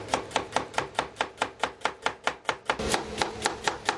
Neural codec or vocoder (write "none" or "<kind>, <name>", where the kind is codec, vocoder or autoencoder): none